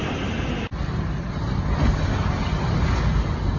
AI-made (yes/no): no